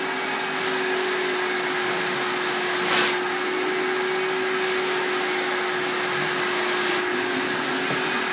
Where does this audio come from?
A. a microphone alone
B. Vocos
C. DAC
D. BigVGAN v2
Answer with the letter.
A